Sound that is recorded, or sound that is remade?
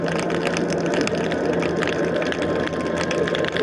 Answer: recorded